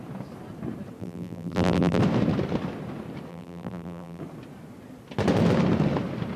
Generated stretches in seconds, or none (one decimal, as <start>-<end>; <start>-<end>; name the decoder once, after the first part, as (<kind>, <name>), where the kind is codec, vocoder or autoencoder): 1.0-2.0 (vocoder, BigVGAN v2); 3.3-4.2